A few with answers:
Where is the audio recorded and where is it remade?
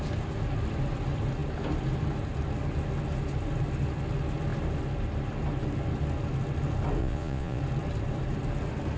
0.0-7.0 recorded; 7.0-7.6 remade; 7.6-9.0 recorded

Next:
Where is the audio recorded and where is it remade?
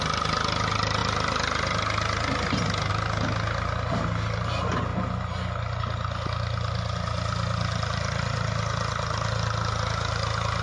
0.0-10.6 recorded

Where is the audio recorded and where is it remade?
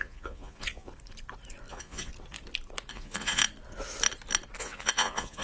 0.0-0.9 remade; 0.9-1.7 recorded; 1.7-2.1 remade; 2.1-2.9 recorded; 2.9-3.4 remade; 3.4-4.6 recorded; 4.6-5.4 remade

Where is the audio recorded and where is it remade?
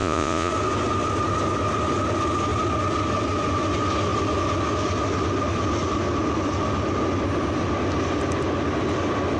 0.0-0.5 remade; 0.5-9.4 recorded